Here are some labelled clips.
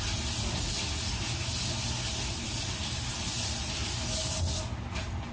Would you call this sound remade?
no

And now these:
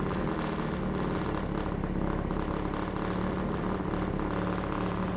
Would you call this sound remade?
no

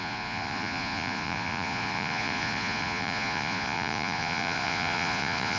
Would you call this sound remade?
yes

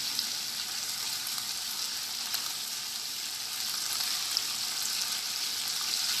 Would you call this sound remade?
no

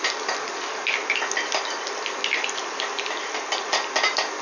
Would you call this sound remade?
no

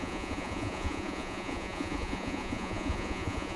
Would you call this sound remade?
yes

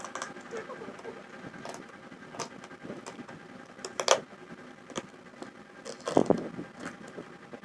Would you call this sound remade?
no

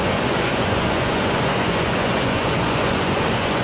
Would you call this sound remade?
yes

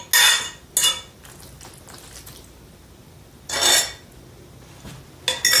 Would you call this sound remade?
no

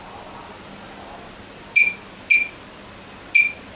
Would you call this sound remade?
no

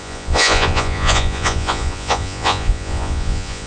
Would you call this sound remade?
yes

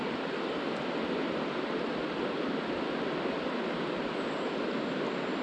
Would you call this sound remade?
no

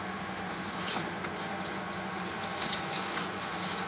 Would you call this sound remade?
yes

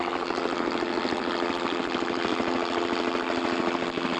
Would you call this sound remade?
no